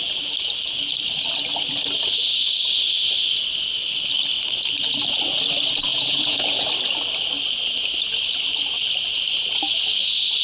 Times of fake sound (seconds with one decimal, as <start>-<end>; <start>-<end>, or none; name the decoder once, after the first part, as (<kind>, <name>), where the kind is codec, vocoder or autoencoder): 5.9-6.7 (vocoder, Vocos)